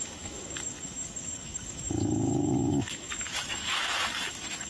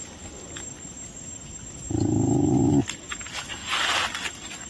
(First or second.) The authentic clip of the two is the second